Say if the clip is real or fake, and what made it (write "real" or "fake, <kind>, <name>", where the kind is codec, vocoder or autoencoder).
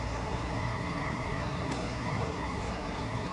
fake, codec, SNAC